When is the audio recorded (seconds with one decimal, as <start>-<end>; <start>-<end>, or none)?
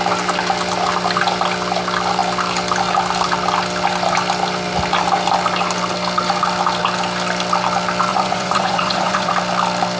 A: 0.0-8.1; 9.3-10.0